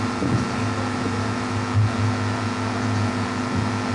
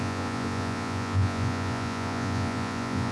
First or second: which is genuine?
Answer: first